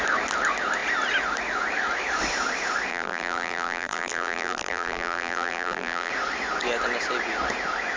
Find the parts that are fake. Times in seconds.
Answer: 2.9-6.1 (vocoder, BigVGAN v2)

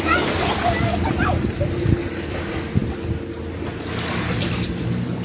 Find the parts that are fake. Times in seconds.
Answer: 0.0-2.8 (vocoder, BigVGAN v2); 4.2-5.2

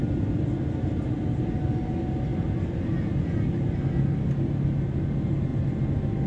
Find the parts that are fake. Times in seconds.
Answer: none

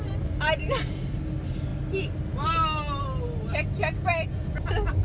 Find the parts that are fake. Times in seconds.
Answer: 0.0-1.7 (vocoder, BigVGAN v2)

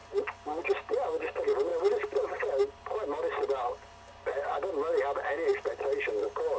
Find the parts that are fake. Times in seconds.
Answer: 0.0-0.6 (vocoder, BigVGAN v2)

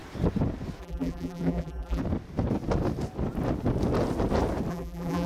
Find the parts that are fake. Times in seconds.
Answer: 0.8-2.0 (vocoder, BigVGAN v2); 4.7-5.3

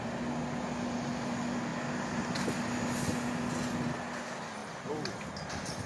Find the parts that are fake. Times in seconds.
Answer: 4.6-5.9 (vocoder, BigVGAN v2)